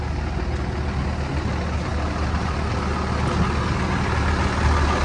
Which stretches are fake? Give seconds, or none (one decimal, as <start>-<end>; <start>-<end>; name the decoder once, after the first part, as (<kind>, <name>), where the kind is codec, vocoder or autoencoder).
none